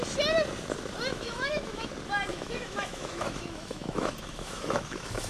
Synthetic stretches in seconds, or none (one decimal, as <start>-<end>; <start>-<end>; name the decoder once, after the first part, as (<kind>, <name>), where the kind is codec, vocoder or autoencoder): 1.1-1.9 (autoencoder, DAC-VAE); 2.3-5.3